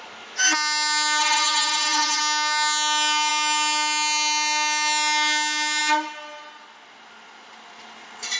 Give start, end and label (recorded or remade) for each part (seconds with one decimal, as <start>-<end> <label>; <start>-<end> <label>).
0.0-1.2 recorded; 1.2-2.2 remade; 2.2-8.4 recorded